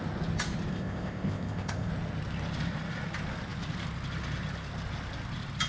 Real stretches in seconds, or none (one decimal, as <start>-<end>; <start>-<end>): 0.0-0.7; 1.9-5.7